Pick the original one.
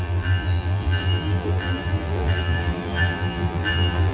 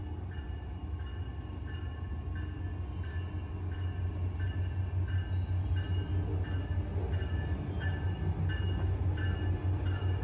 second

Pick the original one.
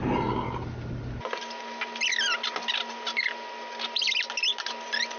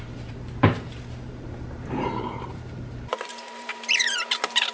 first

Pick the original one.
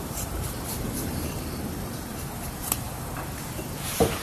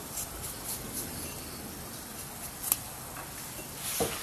second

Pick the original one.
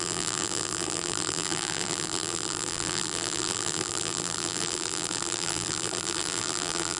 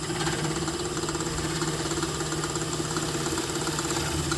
second